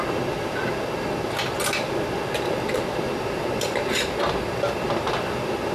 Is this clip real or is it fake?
real